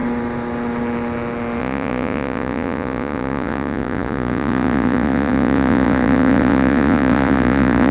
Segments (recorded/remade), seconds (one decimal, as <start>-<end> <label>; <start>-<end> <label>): 0.0-1.6 recorded; 1.6-7.9 remade